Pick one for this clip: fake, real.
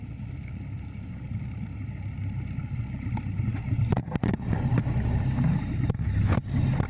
real